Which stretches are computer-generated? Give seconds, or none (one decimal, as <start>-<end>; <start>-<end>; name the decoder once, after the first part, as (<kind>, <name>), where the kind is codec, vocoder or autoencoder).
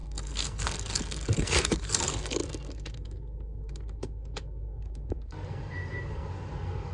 0.0-6.9 (codec, SNAC)